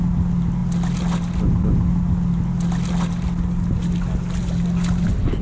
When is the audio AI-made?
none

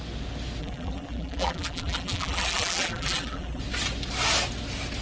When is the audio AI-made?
0.6-3.6 (vocoder, BigVGAN v2)

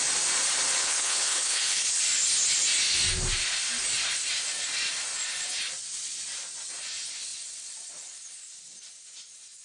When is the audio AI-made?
0.8-2.0 (codec, HILCodec)

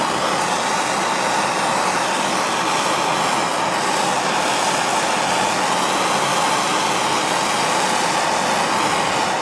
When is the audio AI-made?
none

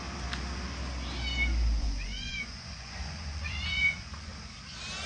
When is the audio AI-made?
1.8-4.3 (vocoder, Vocos)

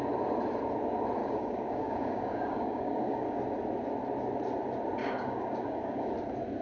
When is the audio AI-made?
1.2-3.4 (codec, DAC); 5.0-6.1

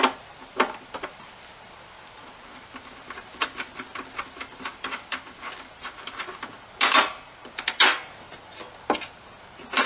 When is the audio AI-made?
none